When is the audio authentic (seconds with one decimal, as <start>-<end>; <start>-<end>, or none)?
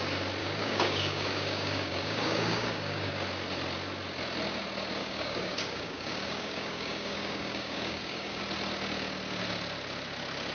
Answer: 0.0-0.4; 3.1-5.0; 8.4-10.5